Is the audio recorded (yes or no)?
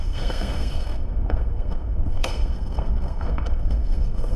no